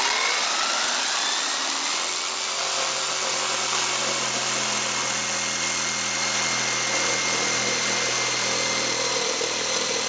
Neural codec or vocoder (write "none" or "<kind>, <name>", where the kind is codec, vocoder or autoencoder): none